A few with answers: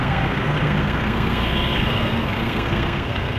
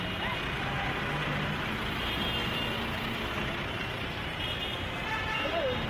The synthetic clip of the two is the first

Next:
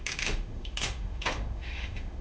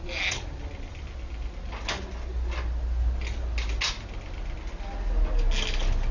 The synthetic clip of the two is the first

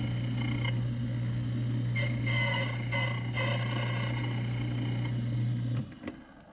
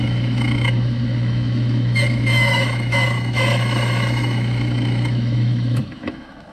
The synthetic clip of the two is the second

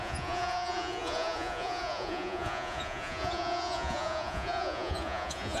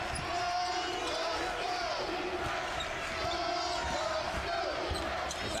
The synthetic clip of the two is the first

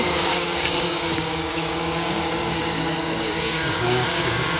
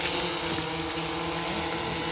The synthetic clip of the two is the first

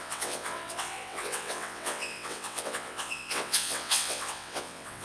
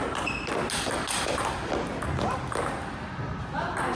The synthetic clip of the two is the first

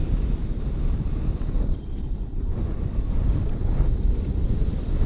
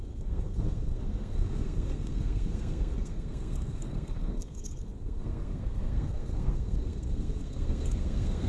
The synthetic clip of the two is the second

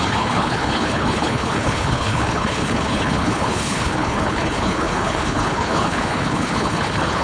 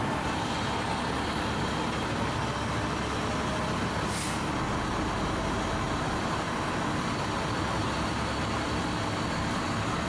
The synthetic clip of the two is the first